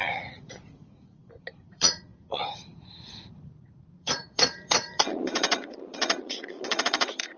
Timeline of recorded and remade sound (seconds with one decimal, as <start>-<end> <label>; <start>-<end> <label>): 0.0-1.2 remade; 1.2-1.7 recorded; 1.7-7.4 remade